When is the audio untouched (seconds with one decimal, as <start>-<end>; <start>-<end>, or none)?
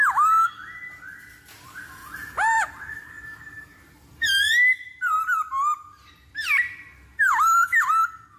0.0-2.0; 6.1-7.1; 7.9-8.4